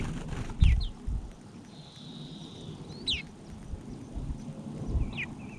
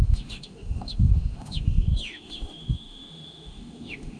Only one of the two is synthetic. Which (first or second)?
second